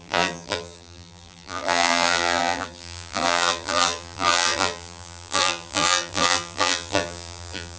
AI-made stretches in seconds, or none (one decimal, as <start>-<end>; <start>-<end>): 0.0-7.8